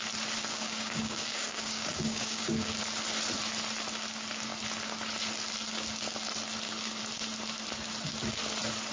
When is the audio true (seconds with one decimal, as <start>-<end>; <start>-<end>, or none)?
0.0-0.5; 2.8-8.9